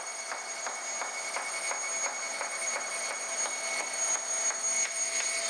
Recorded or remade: recorded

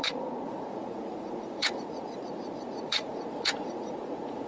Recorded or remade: remade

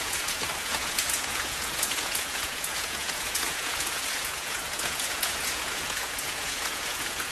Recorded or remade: remade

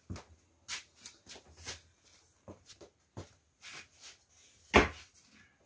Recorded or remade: recorded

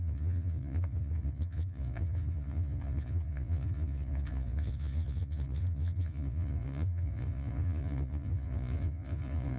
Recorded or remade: remade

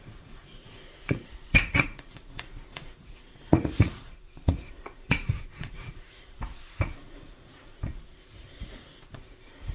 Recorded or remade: remade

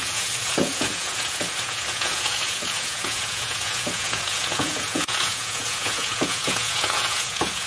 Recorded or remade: remade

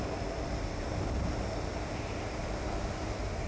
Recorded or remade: recorded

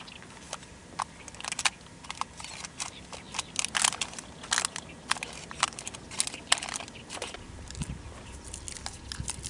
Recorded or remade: recorded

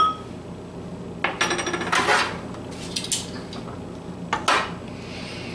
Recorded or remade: recorded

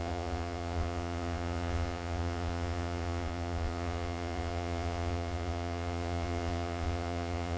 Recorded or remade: remade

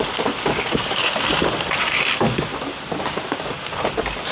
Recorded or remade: recorded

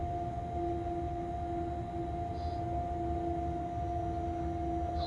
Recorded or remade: recorded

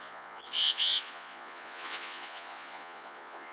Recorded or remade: remade